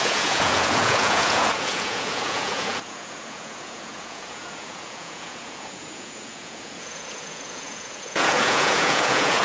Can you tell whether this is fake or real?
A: fake